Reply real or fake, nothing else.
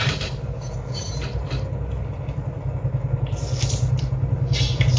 real